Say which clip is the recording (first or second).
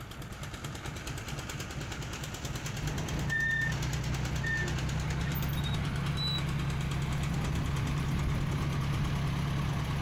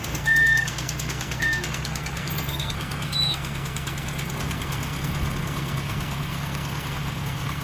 first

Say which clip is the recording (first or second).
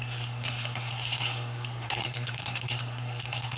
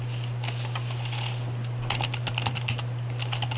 second